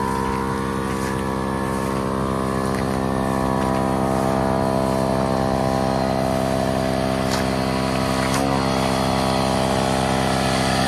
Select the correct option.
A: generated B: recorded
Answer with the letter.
B